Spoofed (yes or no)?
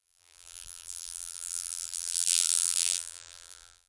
yes